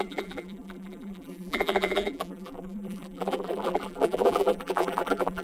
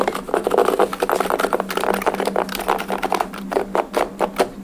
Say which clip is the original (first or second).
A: second